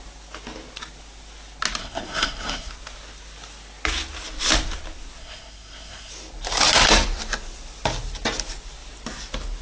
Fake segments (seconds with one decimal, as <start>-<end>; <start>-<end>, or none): 1.8-2.7; 5.2-6.1